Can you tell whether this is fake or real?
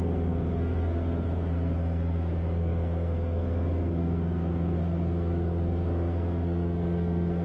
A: fake